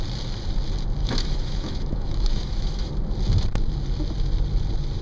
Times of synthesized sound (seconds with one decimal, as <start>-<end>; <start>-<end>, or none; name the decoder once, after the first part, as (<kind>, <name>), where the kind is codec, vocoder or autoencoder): 1.0-2.9 (autoencoder, DAC-VAE)